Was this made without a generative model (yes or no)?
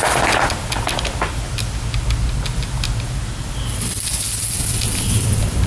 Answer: yes